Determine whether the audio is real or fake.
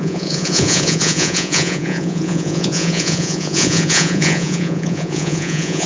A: fake